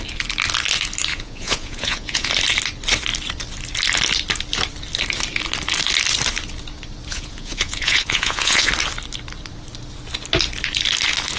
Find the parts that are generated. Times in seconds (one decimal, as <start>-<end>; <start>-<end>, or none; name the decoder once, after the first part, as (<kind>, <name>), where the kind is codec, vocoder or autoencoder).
1.1-2.3 (vocoder, Vocos); 7.1-8.7